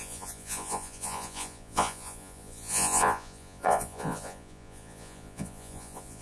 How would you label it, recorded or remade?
remade